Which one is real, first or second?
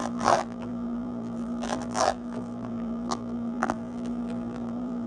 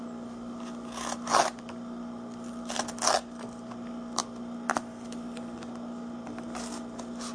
second